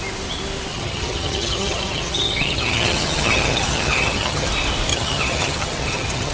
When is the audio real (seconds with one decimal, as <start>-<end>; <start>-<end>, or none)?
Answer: 0.0-0.7; 4.5-4.9